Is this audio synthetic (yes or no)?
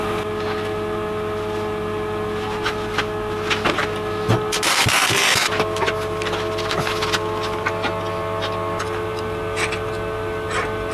no